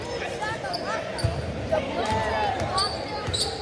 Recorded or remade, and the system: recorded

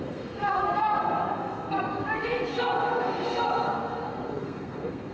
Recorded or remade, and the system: remade, codec, SNAC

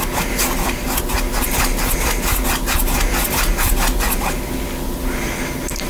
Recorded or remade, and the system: recorded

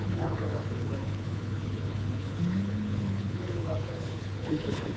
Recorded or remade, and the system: remade, codec, HILCodec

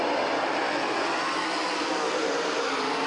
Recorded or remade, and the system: recorded